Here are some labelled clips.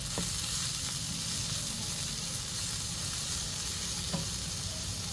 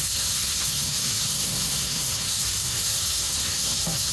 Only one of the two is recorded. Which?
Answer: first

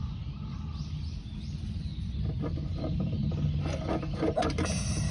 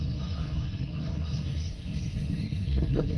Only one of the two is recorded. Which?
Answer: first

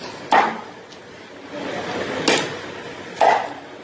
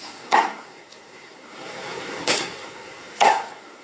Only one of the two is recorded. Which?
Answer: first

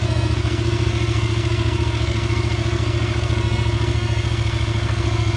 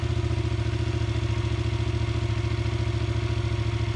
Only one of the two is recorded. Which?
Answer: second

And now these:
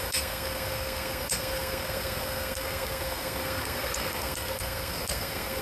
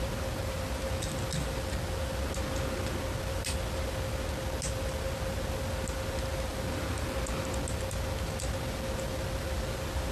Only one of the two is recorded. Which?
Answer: second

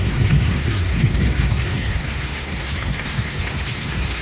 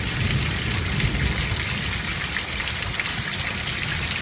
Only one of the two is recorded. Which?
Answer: second